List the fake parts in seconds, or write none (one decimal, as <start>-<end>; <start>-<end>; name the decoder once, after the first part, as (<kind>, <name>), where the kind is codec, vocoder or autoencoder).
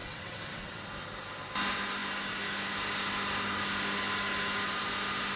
0.0-0.8 (vocoder, WaveNeXt)